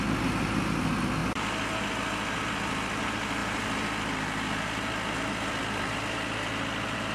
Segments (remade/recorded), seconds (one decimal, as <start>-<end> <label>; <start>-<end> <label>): 0.0-7.1 recorded